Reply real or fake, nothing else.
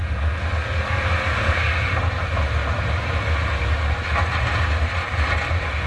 real